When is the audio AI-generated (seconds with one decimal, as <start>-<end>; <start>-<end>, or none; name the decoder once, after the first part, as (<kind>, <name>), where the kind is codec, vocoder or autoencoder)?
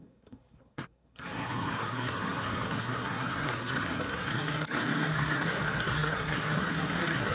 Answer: 0.0-7.3 (codec, SNAC)